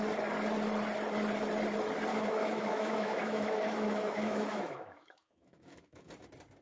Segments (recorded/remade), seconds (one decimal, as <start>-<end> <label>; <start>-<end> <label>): 0.0-2.1 recorded; 2.1-6.1 remade; 6.1-6.6 recorded